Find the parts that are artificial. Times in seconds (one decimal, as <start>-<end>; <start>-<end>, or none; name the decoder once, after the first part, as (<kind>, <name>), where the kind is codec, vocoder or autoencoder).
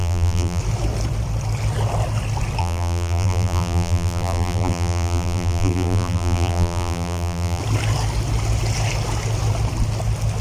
0.0-0.6 (vocoder, BigVGAN v2); 2.6-7.6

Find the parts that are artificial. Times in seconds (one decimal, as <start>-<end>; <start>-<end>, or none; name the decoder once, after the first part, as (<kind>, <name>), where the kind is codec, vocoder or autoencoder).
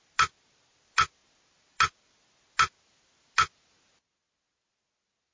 none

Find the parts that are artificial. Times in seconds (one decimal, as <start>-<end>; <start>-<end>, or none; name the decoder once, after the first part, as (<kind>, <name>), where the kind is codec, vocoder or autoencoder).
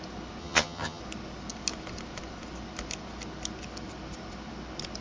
0.4-1.0 (vocoder, HiFi-GAN)